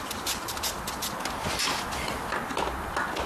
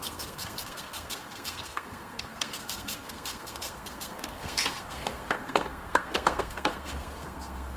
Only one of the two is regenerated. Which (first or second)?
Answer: second